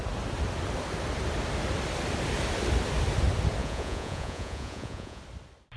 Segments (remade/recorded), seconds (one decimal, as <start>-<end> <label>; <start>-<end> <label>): 0.0-3.6 recorded; 3.6-5.2 remade; 5.2-5.8 recorded